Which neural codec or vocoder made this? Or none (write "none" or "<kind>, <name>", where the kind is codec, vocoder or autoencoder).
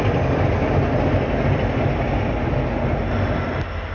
none